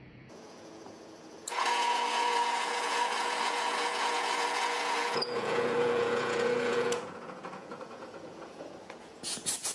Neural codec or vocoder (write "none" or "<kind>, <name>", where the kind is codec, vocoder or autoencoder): vocoder, Vocos